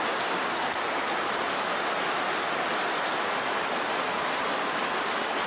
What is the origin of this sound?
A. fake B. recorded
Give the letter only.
B